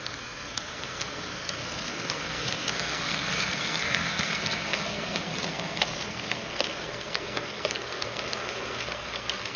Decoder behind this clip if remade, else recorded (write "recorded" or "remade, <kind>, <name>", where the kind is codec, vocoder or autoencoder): remade, codec, SNAC